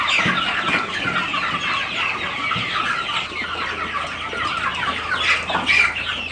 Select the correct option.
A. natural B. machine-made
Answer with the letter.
A